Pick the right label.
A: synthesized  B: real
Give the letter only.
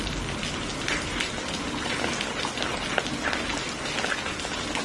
B